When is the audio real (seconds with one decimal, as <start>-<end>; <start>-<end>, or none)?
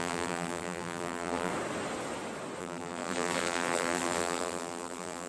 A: 1.5-2.6